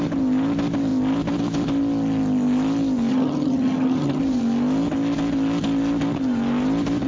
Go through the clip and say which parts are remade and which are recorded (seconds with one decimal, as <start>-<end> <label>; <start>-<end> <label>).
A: 0.0-3.1 recorded; 3.1-4.2 remade; 4.2-7.1 recorded